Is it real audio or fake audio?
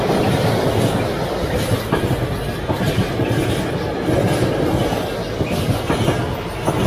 real